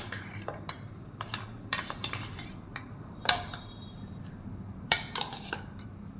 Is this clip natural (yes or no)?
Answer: no